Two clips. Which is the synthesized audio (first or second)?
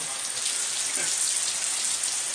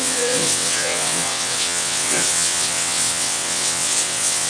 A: second